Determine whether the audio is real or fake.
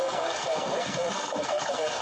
fake